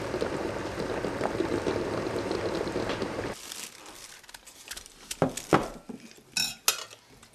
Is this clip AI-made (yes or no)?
no